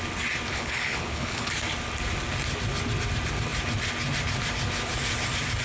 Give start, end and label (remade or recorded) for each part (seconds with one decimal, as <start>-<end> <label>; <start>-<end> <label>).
0.0-0.5 recorded; 0.5-1.5 remade; 1.5-5.6 recorded